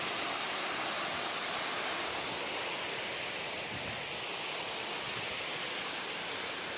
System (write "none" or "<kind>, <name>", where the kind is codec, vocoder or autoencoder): none